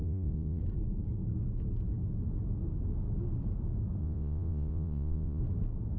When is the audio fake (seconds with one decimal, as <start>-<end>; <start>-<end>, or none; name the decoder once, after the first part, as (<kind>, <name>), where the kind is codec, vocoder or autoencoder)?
0.0-0.6 (vocoder, Vocos); 4.0-5.4